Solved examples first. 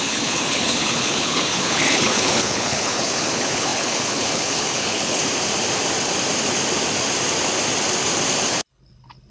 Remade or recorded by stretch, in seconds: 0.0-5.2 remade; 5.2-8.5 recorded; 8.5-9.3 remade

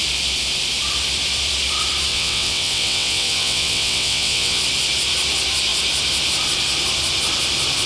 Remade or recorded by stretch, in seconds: 0.0-2.1 recorded; 2.1-4.6 remade; 4.6-7.9 recorded

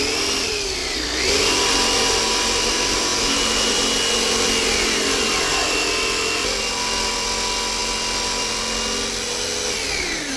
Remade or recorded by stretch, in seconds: 0.0-10.4 recorded